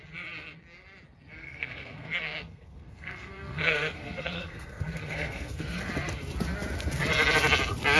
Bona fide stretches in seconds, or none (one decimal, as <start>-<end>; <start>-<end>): 0.0-1.4; 5.8-8.0